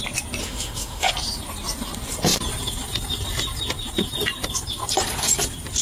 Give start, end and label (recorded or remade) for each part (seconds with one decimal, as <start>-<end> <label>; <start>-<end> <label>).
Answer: 0.0-0.4 recorded; 0.4-1.1 remade; 1.1-5.8 recorded